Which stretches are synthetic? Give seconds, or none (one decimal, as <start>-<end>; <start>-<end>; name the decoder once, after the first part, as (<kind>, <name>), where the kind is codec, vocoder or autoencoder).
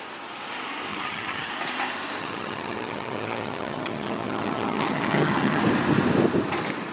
0.9-1.5 (vocoder, HiFi-GAN); 2.2-5.6